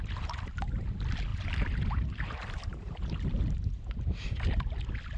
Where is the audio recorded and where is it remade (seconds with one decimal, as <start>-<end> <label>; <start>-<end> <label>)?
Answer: 0.0-1.3 recorded; 1.3-4.4 remade; 4.4-5.2 recorded